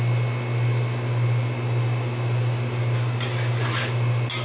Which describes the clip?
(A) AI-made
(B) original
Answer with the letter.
B